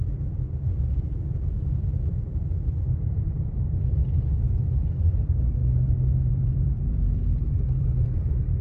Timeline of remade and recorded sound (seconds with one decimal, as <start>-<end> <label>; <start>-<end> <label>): 0.0-4.0 remade; 4.0-4.6 recorded; 4.6-5.6 remade; 5.6-6.3 recorded; 6.3-8.6 remade